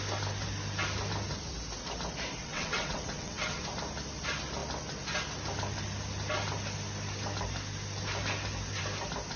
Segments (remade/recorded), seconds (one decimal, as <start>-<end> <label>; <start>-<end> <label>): 0.0-2.4 recorded; 2.4-3.6 remade; 3.6-9.4 recorded